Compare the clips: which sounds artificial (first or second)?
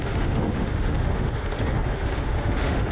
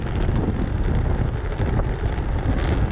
first